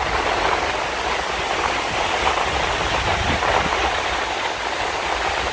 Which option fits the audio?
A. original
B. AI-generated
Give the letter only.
A